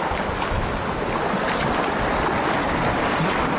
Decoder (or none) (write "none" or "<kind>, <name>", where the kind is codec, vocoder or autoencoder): none